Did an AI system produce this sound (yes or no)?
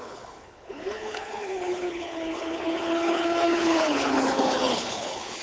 yes